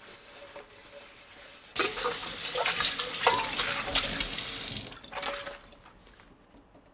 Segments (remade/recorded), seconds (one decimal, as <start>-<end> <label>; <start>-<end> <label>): 0.0-6.9 recorded